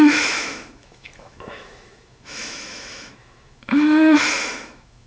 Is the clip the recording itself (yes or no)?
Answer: no